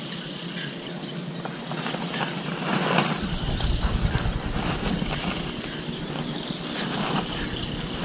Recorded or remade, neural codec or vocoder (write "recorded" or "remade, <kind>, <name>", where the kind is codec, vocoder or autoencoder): recorded